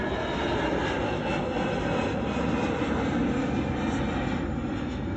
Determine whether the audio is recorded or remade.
recorded